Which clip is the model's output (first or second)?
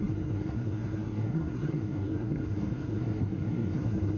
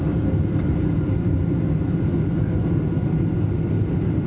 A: first